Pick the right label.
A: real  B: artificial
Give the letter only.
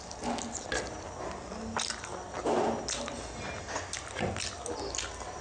A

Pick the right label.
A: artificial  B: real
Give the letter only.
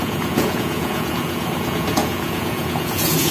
A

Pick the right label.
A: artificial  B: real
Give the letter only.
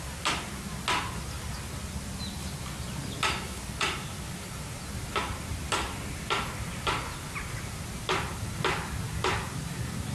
B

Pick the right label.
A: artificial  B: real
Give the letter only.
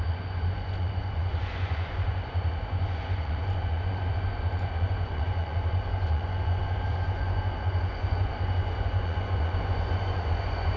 A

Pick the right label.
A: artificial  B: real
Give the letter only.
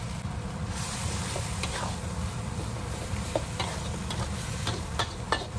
B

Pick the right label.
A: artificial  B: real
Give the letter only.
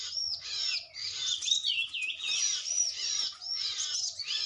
A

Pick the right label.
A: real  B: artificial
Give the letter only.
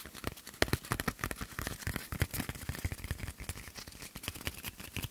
A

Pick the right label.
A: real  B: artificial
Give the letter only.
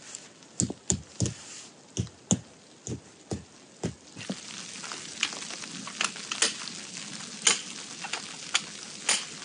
A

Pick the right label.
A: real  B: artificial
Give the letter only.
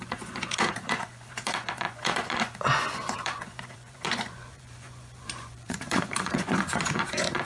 B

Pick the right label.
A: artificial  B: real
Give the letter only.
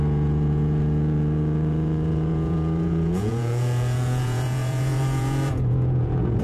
A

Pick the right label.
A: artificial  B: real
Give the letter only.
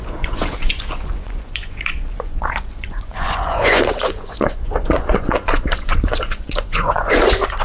A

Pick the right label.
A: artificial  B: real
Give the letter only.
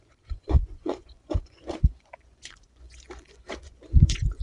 A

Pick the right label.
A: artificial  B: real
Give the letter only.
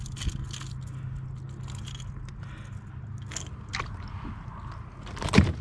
B